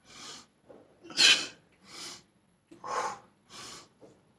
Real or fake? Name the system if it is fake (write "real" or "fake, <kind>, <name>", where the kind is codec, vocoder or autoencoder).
fake, vocoder, Vocos